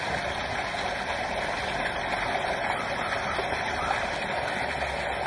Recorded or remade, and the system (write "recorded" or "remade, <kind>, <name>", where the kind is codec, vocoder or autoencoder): recorded